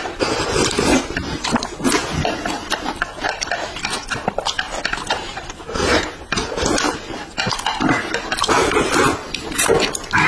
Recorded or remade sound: recorded